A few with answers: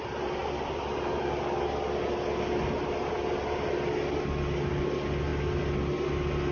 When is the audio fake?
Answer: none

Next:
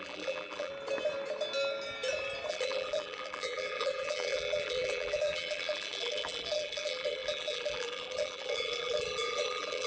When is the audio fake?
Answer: 0.0-0.7 (vocoder, BigVGAN v2); 2.5-9.9

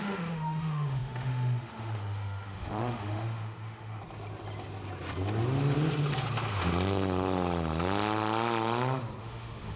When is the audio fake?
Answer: 0.0-4.0 (autoencoder, DAC-VAE); 9.2-9.8